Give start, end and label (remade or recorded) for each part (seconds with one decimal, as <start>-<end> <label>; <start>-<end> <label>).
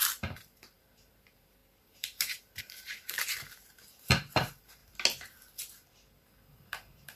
0.0-4.8 remade; 4.8-6.5 recorded; 6.5-7.2 remade